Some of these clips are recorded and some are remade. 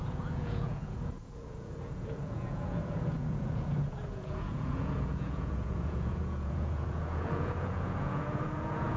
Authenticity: remade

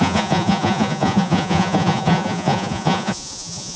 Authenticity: remade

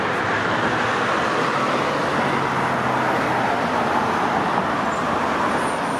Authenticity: recorded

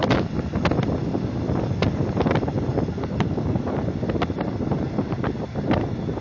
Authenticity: recorded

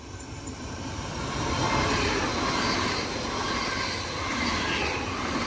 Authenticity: recorded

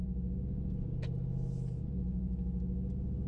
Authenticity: recorded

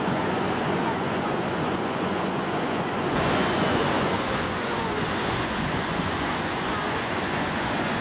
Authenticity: remade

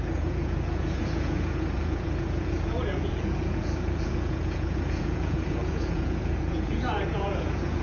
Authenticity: remade